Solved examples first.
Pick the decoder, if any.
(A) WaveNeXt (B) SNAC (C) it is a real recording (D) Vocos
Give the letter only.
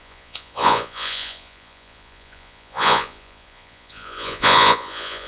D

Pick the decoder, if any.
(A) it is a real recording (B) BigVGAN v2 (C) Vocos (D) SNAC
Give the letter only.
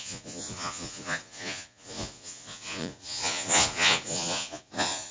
C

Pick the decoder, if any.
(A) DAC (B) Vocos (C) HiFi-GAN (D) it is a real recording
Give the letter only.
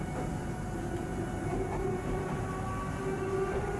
D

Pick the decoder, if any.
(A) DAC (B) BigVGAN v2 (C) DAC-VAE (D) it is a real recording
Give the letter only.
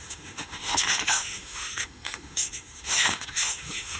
C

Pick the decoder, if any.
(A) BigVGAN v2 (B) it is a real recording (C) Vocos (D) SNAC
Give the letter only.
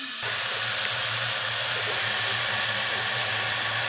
B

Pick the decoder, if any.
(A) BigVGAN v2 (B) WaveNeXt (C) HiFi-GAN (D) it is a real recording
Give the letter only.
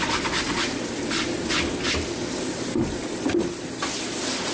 D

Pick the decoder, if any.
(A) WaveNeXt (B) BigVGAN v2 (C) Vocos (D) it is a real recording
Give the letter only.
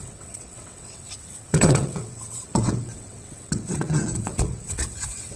A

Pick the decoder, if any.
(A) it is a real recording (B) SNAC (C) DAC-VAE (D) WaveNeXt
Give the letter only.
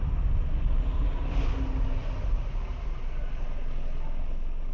A